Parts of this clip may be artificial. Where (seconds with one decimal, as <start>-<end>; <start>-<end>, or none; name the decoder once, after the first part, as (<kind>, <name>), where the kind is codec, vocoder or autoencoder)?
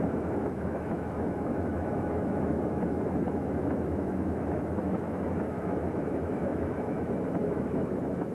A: 0.0-8.3 (autoencoder, DAC-VAE)